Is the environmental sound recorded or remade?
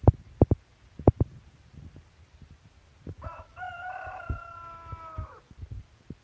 recorded